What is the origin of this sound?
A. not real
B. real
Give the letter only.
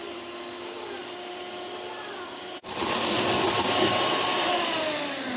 B